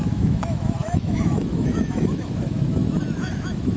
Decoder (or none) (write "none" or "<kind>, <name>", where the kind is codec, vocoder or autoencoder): autoencoder, DAC-VAE